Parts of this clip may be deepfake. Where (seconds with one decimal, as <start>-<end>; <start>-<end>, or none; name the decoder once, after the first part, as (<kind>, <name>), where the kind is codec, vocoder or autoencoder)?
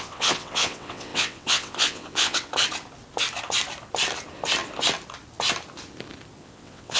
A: 0.0-2.5 (vocoder, WaveNeXt); 6.4-7.0